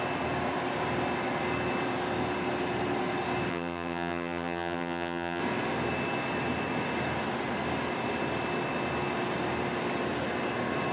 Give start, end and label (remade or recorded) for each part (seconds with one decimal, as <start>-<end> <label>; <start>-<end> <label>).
0.0-3.5 recorded; 3.5-5.4 remade; 5.4-10.9 recorded